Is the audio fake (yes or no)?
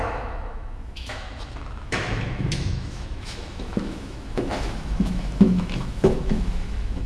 yes